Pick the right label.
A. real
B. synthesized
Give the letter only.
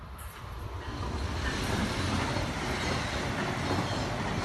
A